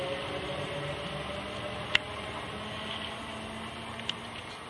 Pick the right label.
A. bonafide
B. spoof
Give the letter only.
A